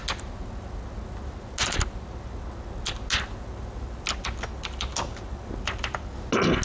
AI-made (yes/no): no